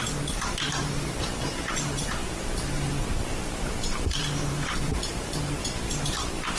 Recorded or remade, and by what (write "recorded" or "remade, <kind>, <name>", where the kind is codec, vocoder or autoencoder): remade, vocoder, BigVGAN v2